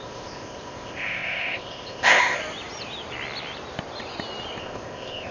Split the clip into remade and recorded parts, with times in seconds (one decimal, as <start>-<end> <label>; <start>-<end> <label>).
0.0-2.4 remade; 2.4-4.6 recorded; 4.6-5.3 remade